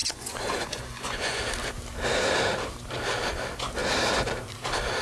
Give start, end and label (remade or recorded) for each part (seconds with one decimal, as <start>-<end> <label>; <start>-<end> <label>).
0.0-1.4 remade; 1.4-5.0 recorded